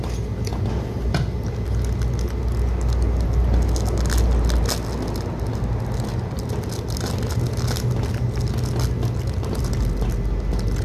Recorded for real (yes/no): yes